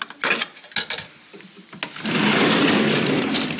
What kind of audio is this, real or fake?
real